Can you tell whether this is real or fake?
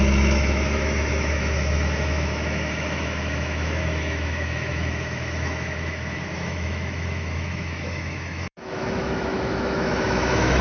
fake